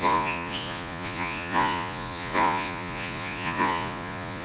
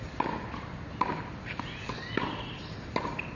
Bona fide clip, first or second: second